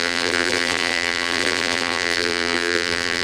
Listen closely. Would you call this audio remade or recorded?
remade